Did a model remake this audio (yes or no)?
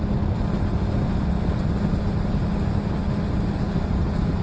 no